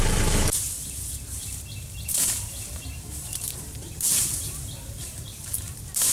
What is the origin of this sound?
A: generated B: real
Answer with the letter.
A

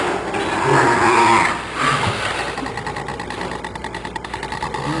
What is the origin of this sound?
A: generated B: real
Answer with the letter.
B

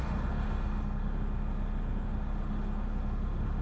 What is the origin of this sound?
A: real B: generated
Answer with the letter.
B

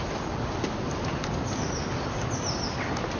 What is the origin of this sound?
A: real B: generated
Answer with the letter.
A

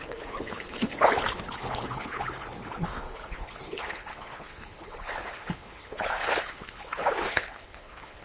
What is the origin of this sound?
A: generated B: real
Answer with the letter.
A